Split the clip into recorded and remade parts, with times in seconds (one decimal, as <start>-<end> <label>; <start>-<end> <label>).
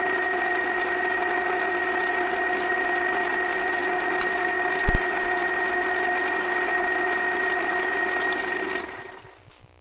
0.0-9.8 recorded